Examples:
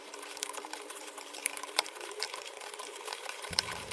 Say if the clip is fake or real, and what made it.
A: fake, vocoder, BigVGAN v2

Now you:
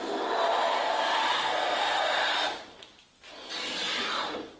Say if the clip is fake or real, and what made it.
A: real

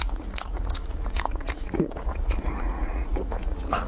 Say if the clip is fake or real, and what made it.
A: fake, vocoder, Vocos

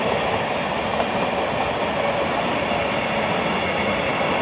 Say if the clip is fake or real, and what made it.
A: real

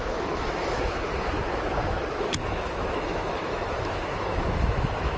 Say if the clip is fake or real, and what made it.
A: fake, autoencoder, DAC-VAE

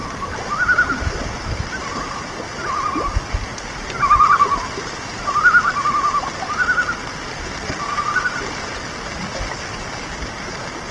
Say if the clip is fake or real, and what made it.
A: real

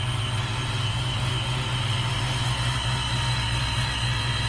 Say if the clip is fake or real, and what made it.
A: real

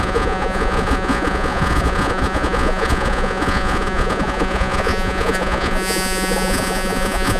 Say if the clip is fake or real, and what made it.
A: fake, vocoder, Vocos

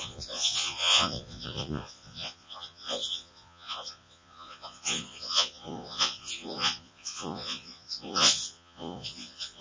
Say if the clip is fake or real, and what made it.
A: fake, vocoder, Vocos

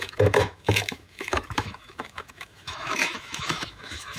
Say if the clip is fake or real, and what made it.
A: fake, autoencoder, DAC-VAE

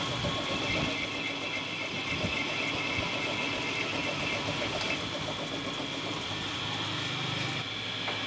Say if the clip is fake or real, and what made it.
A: real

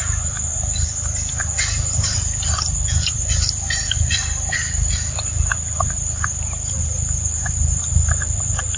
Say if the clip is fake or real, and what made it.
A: real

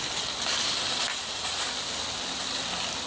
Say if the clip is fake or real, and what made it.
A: real